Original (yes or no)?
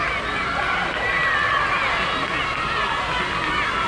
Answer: yes